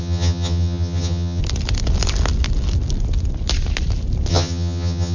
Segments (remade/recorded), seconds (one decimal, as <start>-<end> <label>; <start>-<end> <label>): 0.0-1.4 remade; 1.4-4.3 recorded; 4.3-5.1 remade